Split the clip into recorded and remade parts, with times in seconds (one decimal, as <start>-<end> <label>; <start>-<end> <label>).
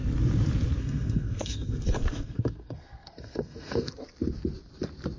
0.0-0.8 recorded; 0.8-3.9 remade; 3.9-5.2 recorded